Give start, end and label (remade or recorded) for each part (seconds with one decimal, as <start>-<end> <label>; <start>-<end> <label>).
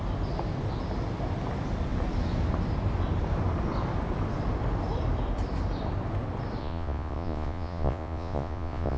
0.0-6.6 recorded; 6.6-9.0 remade